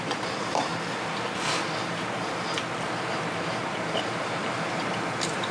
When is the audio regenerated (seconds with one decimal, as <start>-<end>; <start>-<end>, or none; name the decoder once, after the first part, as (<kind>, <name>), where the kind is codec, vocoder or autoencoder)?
0.0-0.7 (vocoder, BigVGAN v2); 3.1-5.5